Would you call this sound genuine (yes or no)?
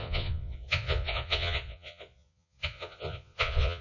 no